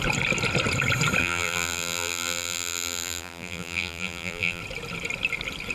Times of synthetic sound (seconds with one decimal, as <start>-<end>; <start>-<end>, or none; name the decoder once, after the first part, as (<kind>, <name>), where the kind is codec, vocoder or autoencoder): 1.2-4.6 (vocoder, BigVGAN v2)